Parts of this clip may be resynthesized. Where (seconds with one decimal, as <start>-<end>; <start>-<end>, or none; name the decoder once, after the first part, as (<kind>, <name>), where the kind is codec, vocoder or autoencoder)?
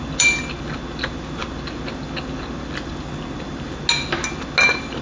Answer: none